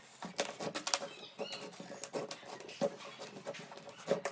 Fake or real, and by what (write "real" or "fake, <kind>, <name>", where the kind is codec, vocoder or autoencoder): real